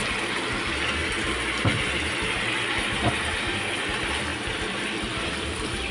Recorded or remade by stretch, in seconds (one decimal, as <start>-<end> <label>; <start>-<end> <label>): 0.0-4.3 recorded; 4.3-5.9 remade